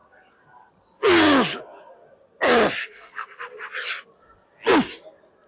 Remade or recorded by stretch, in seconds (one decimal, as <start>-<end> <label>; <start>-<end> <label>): 0.0-2.8 recorded; 2.8-3.4 remade; 3.4-5.5 recorded

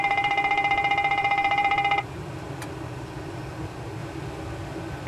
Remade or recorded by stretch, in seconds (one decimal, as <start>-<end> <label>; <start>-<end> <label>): 0.0-4.0 remade; 4.0-5.1 recorded

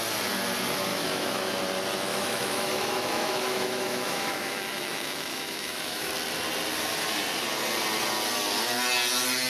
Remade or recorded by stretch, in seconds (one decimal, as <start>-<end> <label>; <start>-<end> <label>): 0.0-0.9 recorded; 0.9-1.5 remade; 1.5-2.1 recorded; 2.1-6.1 remade; 6.1-9.5 recorded